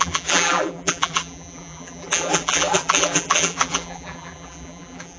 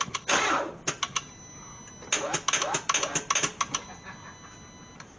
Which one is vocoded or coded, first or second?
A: first